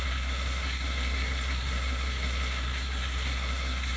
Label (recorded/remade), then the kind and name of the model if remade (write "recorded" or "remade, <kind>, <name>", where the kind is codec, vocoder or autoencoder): remade, codec, SNAC